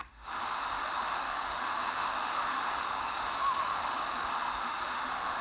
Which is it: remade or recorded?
remade